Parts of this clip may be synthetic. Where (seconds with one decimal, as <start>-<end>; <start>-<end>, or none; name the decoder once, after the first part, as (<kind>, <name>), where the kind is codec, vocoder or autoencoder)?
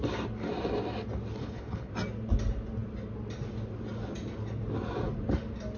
1.4-1.9 (codec, HILCodec)